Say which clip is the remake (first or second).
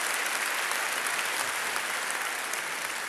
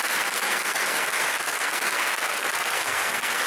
second